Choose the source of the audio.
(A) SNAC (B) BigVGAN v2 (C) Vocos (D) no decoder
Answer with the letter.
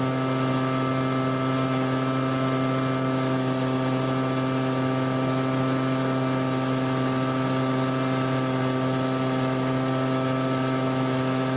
D